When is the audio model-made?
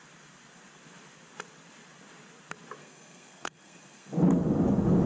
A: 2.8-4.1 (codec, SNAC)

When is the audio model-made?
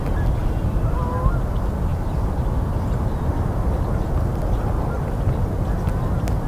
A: none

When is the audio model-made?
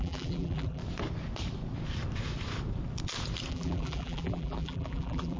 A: 0.0-0.8 (vocoder, BigVGAN v2); 3.5-5.4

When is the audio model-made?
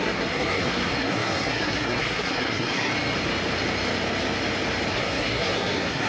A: 0.0-2.9 (codec, SNAC); 4.9-6.1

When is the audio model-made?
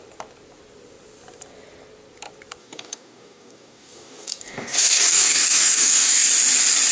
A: 2.6-6.3 (codec, DAC)